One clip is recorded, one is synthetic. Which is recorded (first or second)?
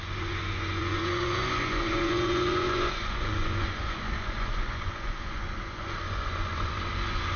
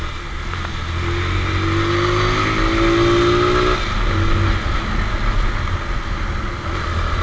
second